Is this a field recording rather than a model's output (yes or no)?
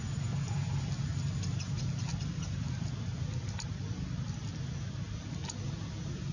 yes